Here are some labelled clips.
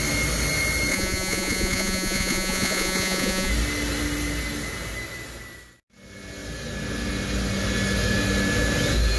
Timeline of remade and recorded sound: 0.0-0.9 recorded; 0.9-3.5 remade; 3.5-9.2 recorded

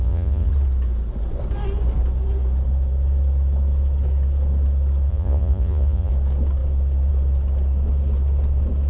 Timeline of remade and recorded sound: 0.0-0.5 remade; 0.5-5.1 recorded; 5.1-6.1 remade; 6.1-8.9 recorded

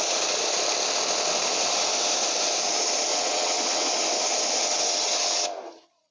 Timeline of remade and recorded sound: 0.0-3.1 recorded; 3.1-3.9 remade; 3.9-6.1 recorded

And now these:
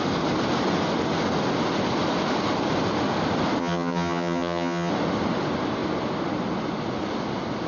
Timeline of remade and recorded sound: 0.0-3.6 recorded; 3.6-4.9 remade; 4.9-7.7 recorded

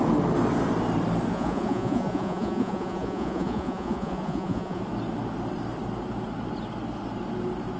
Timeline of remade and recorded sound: 0.0-1.3 recorded; 1.3-4.8 remade; 4.8-7.8 recorded